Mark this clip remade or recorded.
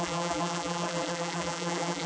remade